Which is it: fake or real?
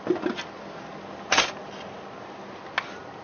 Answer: real